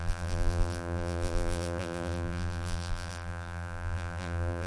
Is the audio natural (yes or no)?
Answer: no